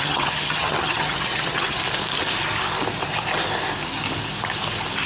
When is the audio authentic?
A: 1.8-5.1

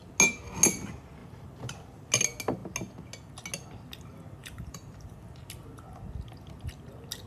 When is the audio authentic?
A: 0.0-1.2; 2.1-4.4; 5.4-7.3

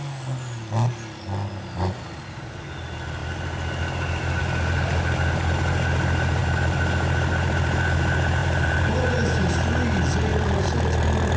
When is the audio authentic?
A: 0.0-8.4; 9.0-10.3

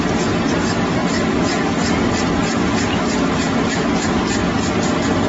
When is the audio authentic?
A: 1.0-3.1; 4.4-5.3